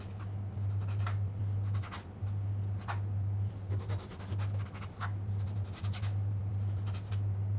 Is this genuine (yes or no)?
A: yes